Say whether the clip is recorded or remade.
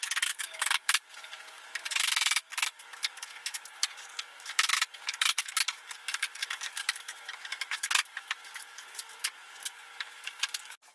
remade